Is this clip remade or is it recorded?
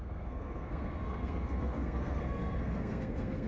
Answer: remade